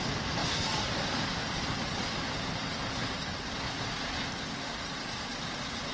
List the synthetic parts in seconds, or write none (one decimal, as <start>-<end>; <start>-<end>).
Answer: none